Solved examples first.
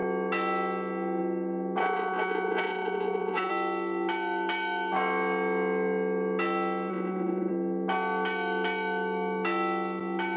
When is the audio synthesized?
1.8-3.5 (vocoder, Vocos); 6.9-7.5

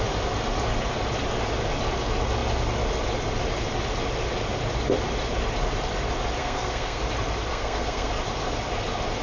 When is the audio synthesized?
6.4-7.0 (codec, SNAC); 7.5-8.1

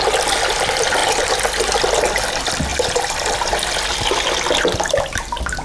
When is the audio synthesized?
2.7-3.9 (vocoder, BigVGAN v2)

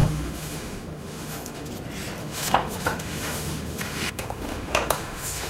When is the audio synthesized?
0.0-1.7 (autoencoder, DAC-VAE); 2.2-5.5

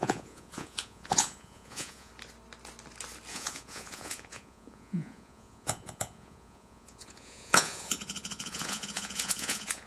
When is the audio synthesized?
0.0-2.1 (vocoder, Vocos); 3.3-9.9

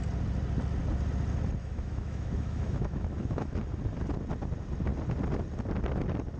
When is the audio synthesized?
1.6-3.6 (autoencoder, DAC-VAE)